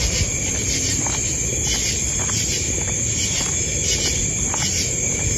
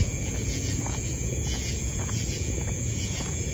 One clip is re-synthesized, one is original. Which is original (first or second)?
first